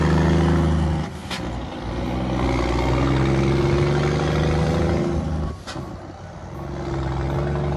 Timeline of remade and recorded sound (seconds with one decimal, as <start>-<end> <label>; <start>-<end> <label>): 0.0-7.8 recorded

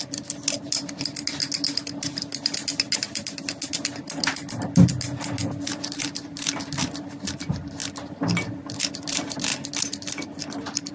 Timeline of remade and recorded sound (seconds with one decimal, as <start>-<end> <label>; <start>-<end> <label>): 0.0-10.9 recorded